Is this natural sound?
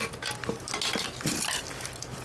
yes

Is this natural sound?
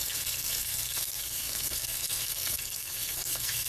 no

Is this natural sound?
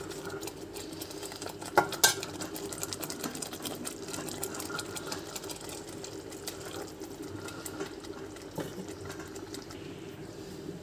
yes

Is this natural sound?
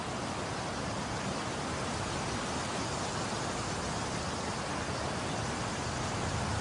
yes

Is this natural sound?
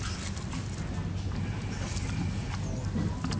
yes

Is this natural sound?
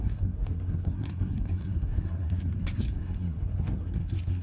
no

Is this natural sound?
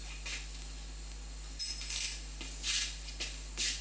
yes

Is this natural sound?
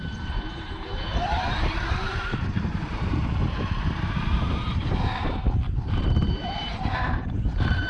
no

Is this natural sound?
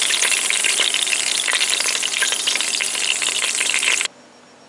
yes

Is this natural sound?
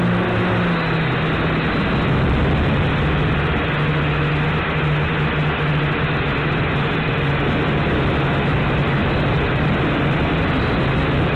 yes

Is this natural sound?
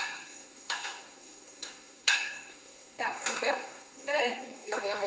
no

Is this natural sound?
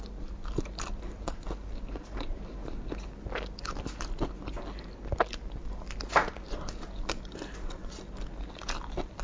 yes